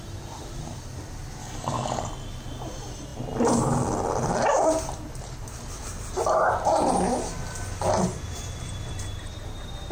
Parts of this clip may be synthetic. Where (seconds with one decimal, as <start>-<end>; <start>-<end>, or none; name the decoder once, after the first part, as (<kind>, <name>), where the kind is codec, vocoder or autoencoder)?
1.4-2.0 (codec, DAC)